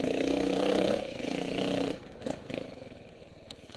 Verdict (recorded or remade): remade